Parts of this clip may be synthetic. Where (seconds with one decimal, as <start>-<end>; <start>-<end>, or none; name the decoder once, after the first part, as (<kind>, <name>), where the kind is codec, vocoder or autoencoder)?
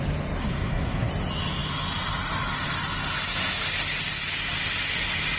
0.4-1.1 (codec, SNAC)